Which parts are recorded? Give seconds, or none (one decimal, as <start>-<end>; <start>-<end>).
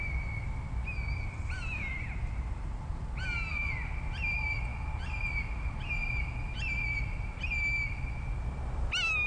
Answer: 0.0-9.3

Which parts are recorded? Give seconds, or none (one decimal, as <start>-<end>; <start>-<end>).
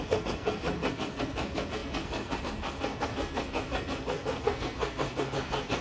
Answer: none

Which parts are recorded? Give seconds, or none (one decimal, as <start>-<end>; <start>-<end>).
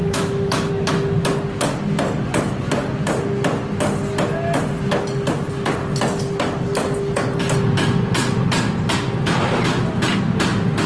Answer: 0.7-10.9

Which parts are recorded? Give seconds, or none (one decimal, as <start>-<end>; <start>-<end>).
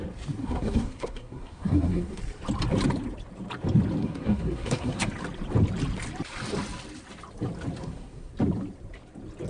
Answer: 0.0-0.4; 2.2-4.0; 5.1-7.8; 8.3-9.5